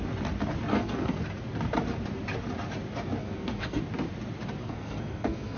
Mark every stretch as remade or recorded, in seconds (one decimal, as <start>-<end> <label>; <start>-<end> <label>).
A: 0.0-0.7 recorded; 0.7-1.2 remade; 1.2-3.2 recorded; 3.2-3.8 remade; 3.8-4.6 recorded; 4.6-5.6 remade